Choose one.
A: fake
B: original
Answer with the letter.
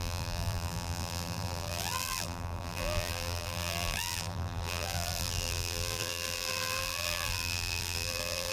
A